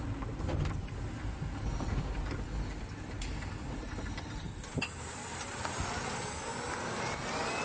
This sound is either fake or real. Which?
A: real